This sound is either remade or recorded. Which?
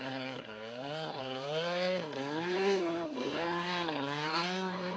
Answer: remade